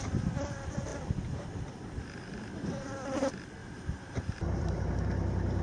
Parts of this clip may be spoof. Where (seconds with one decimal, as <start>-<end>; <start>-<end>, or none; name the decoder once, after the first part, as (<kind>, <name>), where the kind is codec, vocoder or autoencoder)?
3.6-4.9 (vocoder, BigVGAN v2)